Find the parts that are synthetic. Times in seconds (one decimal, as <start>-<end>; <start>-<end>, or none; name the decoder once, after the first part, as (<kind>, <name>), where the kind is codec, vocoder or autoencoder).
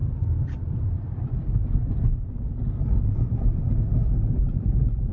0.0-5.1 (vocoder, BigVGAN v2)